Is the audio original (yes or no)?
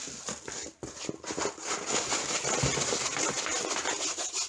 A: yes